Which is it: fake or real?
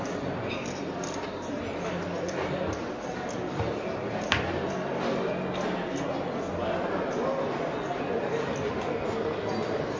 real